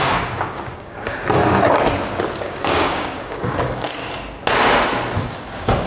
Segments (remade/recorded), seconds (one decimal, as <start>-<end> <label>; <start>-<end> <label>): 0.0-1.4 remade; 1.4-2.4 recorded; 2.4-4.0 remade; 4.0-5.2 recorded; 5.2-5.9 remade

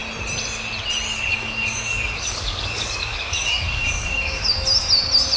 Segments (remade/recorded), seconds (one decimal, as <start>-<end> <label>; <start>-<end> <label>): 0.0-1.3 recorded; 1.3-4.5 remade; 4.5-5.4 recorded

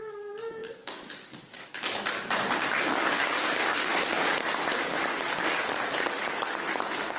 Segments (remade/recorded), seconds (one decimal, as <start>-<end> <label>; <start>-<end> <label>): 0.0-3.9 remade; 3.9-4.8 recorded; 4.8-7.2 remade

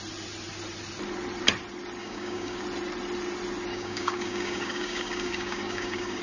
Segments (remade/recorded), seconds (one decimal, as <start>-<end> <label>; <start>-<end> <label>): 0.0-2.0 recorded; 2.0-2.6 remade; 2.6-3.7 recorded; 3.7-6.2 remade

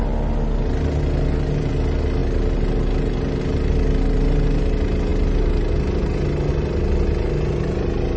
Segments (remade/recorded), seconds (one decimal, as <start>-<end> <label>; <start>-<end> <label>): 0.0-8.2 recorded